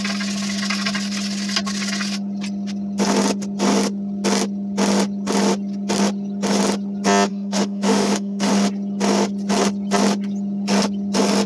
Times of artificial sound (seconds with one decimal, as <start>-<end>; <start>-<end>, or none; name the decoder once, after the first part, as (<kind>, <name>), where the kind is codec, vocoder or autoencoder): 7.3-8.5 (autoencoder, DAC-VAE)